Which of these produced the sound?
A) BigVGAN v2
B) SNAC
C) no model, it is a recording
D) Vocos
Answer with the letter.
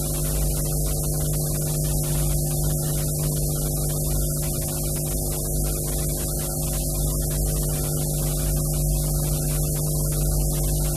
C